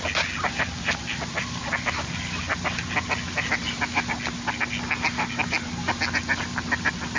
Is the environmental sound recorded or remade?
recorded